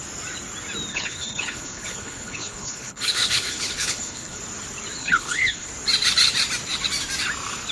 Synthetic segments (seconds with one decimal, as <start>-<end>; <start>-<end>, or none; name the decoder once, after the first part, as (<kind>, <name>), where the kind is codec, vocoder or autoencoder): 0.9-4.4 (codec, HILCodec); 5.0-5.7

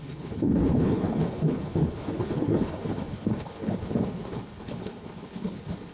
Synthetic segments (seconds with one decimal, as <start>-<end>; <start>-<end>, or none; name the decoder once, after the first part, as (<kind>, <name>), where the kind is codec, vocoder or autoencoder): 0.0-5.9 (codec, HILCodec)